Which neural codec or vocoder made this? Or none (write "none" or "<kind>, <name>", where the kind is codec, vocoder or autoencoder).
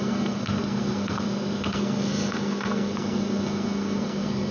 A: codec, SNAC